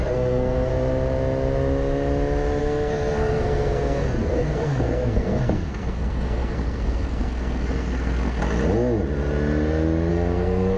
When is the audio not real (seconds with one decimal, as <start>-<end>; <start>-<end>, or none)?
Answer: 0.0-0.7; 2.6-8.4; 10.1-10.8

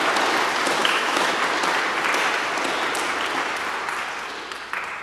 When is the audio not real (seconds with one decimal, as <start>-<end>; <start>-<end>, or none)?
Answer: 0.8-1.4

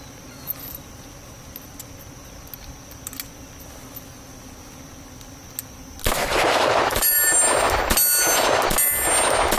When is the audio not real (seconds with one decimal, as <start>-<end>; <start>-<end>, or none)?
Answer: 6.2-7.4